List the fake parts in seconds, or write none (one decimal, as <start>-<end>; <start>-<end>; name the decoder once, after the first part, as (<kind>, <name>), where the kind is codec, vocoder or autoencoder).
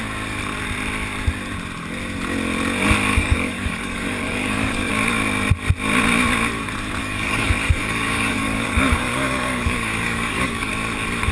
3.1-4.9 (codec, DAC); 7.0-10.7